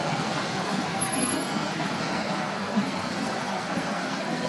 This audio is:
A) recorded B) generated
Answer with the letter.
B